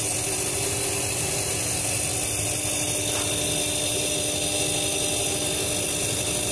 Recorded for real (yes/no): yes